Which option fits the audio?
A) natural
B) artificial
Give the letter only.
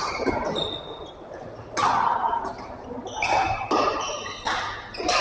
A